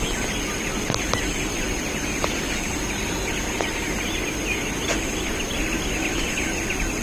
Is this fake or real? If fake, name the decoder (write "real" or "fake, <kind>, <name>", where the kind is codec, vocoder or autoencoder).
real